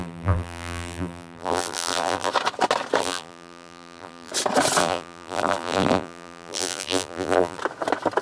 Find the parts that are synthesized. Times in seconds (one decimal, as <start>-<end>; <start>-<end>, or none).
0.0-2.3; 3.0-4.3; 4.8-7.6

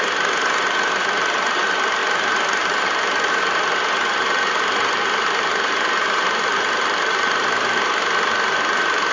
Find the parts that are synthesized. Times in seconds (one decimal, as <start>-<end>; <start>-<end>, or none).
2.0-3.3; 6.4-7.9

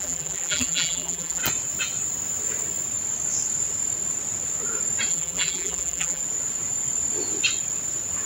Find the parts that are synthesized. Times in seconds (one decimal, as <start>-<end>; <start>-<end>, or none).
0.0-1.4; 5.1-6.2

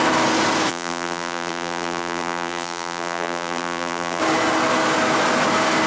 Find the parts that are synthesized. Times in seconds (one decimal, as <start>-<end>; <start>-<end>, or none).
0.7-4.2

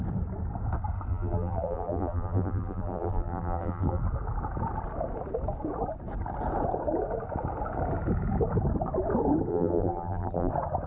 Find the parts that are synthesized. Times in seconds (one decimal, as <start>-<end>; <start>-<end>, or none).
1.1-4.0; 9.5-10.5

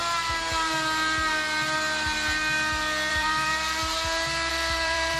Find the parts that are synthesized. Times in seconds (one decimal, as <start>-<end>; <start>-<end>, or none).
3.1-3.8; 4.5-5.2

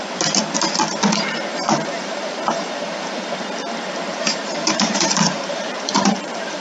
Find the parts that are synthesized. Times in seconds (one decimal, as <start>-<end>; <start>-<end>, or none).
1.5-3.3; 4.1-6.6